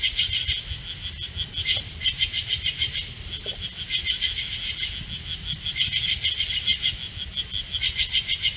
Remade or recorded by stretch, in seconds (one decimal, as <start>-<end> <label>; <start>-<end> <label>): 0.0-8.6 recorded